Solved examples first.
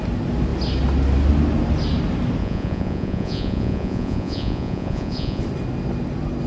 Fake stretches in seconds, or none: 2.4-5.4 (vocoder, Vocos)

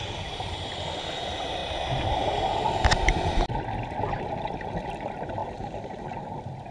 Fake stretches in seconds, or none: 0.0-1.6 (vocoder, BigVGAN v2); 3.5-5.4; 6.3-6.7